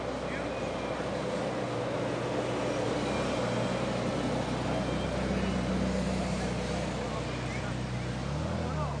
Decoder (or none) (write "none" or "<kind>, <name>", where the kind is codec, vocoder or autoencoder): none